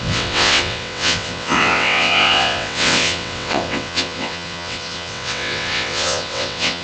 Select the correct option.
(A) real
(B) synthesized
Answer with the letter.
B